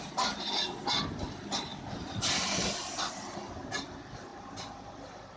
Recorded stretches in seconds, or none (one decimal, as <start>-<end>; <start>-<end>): 0.0-5.4